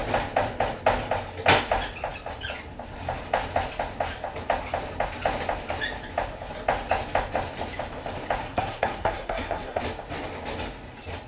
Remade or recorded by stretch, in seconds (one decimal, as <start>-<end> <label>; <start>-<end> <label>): 0.0-8.4 recorded; 8.4-9.8 remade; 9.8-11.3 recorded